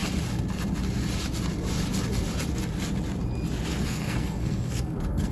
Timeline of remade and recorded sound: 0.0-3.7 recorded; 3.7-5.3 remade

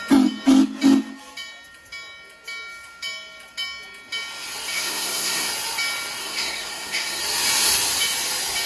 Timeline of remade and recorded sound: 0.0-4.7 recorded; 4.7-5.5 remade; 5.5-6.2 recorded; 6.2-7.2 remade; 7.2-8.7 recorded

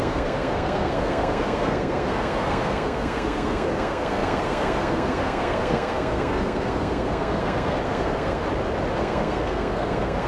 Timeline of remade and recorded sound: 0.0-8.4 remade; 8.4-9.0 recorded; 9.0-10.3 remade